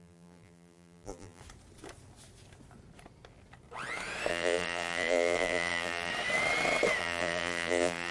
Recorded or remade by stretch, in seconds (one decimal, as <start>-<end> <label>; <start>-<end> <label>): 0.0-1.4 remade; 1.4-4.3 recorded; 4.3-6.1 remade; 6.1-7.0 recorded; 7.0-8.1 remade